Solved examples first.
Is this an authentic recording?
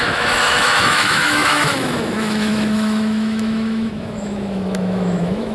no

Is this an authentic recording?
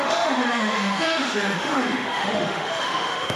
no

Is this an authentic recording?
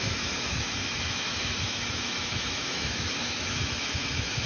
no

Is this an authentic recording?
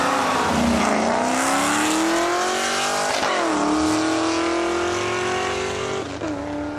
yes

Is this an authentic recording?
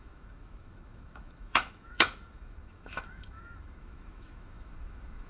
no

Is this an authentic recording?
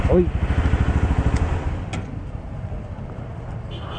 yes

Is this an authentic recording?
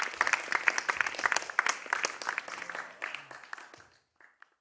yes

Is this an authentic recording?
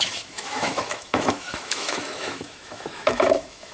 no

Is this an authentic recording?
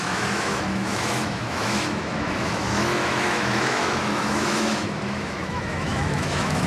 no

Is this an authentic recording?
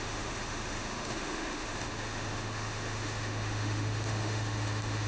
no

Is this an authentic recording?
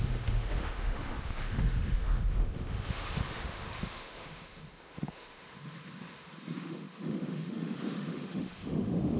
no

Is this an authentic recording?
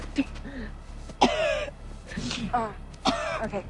yes